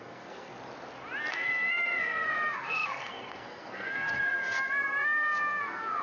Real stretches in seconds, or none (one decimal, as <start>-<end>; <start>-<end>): 0.5-1.3